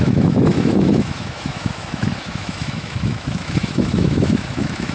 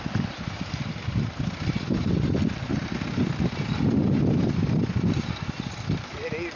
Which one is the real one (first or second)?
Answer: second